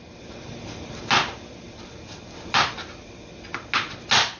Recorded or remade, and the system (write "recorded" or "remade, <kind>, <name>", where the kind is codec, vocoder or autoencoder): recorded